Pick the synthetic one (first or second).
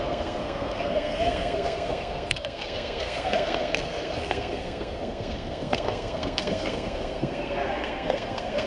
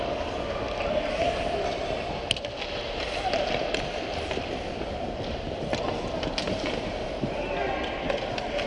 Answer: first